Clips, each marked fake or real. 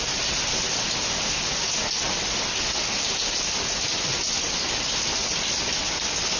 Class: real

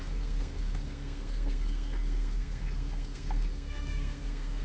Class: fake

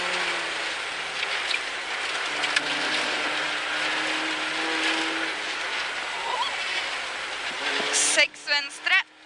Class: real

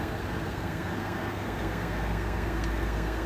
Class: fake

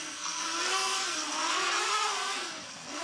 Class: fake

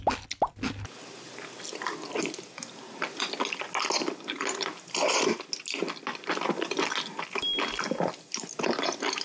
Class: real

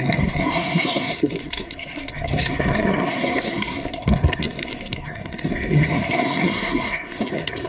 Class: fake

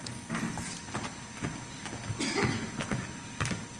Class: real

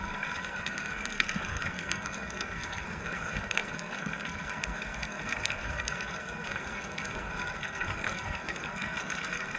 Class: fake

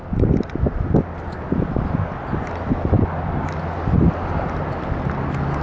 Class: real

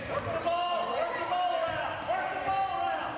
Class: real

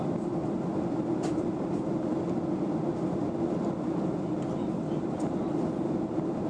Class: real